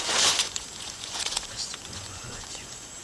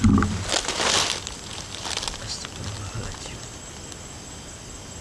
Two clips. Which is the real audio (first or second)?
second